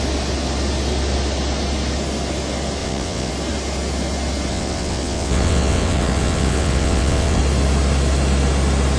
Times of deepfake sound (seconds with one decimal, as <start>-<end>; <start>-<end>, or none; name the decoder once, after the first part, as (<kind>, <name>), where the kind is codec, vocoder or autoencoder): 2.8-3.3 (vocoder, WaveNeXt); 4.5-7.4